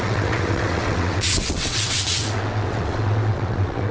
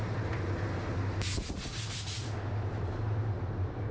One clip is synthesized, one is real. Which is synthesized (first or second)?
first